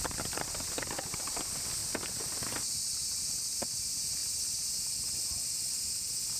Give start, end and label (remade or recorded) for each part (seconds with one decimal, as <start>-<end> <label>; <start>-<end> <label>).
0.0-1.8 recorded; 1.8-2.4 remade; 2.4-3.0 recorded; 3.0-3.6 remade; 3.6-6.4 recorded